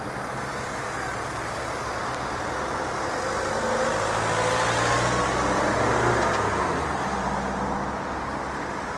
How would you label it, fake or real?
real